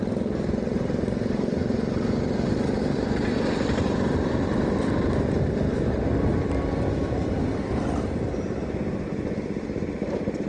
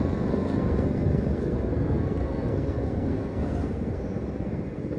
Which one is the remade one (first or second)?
second